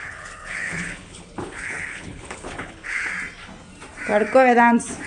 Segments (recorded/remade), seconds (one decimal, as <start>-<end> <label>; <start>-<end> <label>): 0.0-3.1 remade; 3.1-5.1 recorded